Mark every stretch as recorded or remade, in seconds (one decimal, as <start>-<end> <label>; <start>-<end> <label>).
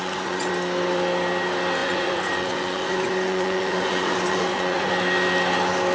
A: 0.0-0.5 remade; 0.5-1.8 recorded; 1.8-4.9 remade; 4.9-5.9 recorded